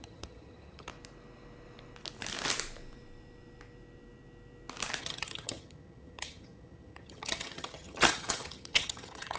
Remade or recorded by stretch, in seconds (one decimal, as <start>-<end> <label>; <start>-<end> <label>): 0.0-0.9 remade; 0.9-5.0 recorded; 5.0-9.4 remade